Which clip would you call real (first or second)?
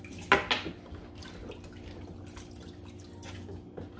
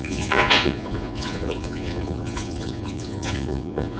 first